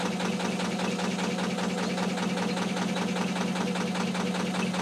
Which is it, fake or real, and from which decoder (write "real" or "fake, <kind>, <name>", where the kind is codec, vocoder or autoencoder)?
real